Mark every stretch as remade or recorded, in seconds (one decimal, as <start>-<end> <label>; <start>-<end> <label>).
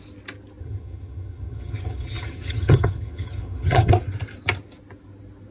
0.0-0.6 recorded; 0.6-3.9 remade; 3.9-5.5 recorded